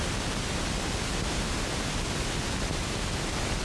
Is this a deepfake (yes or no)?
no